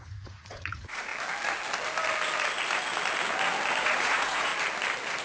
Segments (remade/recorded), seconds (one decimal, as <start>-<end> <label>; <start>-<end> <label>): 0.0-1.1 remade; 1.1-3.8 recorded; 3.8-4.5 remade; 4.5-5.2 recorded